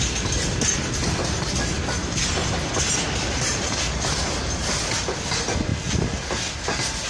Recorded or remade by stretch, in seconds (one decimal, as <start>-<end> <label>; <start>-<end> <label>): 0.0-7.1 recorded